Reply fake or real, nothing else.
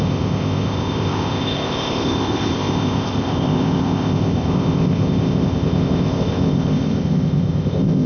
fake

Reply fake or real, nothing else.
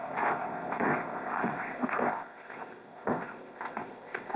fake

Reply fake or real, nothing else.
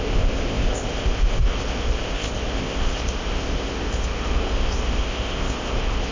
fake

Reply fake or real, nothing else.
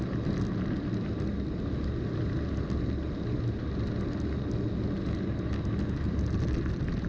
real